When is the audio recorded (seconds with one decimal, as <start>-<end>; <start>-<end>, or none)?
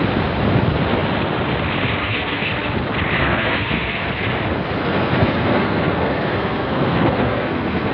0.0-2.0; 2.5-3.2; 4.1-4.8